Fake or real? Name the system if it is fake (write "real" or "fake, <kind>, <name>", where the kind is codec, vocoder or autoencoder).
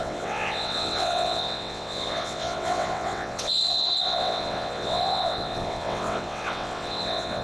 fake, vocoder, WaveNeXt